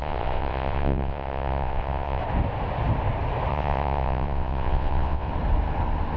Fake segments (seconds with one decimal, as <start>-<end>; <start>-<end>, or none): 0.0-2.2; 3.5-5.3